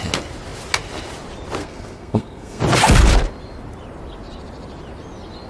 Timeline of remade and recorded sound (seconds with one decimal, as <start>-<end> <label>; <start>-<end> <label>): 0.0-1.6 recorded; 1.6-2.6 remade; 2.6-5.5 recorded